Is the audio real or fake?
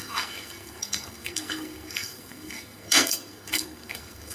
fake